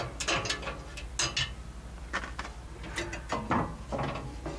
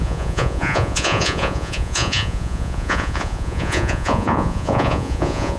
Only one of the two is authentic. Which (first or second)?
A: first